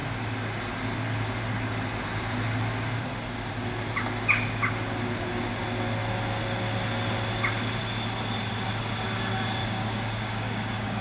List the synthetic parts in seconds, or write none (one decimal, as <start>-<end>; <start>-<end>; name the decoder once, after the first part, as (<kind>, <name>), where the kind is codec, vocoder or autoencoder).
9.6-11.0 (codec, DAC)